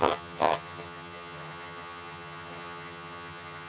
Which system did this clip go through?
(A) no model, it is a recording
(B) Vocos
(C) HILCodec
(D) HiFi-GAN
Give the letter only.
D